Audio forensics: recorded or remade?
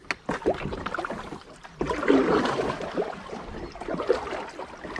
recorded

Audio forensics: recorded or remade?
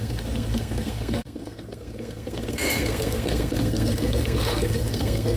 remade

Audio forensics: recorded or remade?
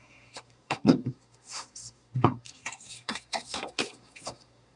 remade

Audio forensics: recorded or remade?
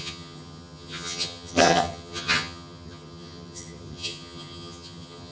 remade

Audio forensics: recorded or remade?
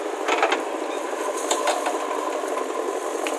recorded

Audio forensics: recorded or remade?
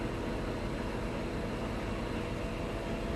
recorded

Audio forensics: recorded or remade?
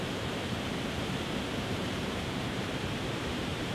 remade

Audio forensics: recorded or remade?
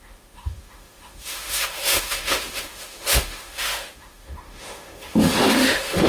remade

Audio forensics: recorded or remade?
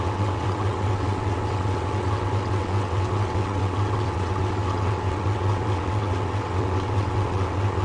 remade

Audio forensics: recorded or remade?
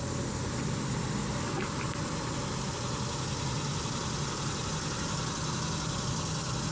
recorded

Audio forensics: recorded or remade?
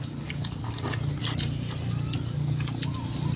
recorded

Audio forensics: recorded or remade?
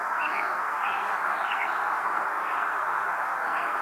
remade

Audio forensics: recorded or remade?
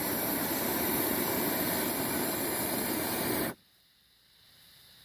remade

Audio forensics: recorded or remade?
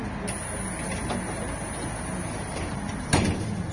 recorded